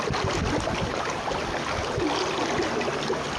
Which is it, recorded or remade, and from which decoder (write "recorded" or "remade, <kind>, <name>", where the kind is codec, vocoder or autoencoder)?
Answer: recorded